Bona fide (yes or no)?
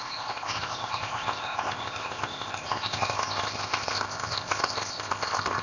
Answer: no